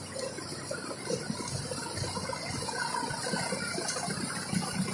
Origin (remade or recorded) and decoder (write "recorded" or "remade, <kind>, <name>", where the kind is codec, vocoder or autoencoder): recorded